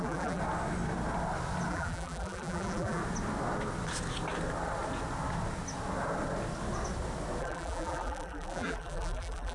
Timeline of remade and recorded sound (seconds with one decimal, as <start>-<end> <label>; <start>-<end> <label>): 0.0-0.4 remade; 0.4-1.7 recorded; 1.7-3.0 remade; 3.0-7.4 recorded; 7.4-9.5 remade